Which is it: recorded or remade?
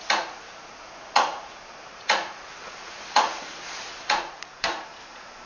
remade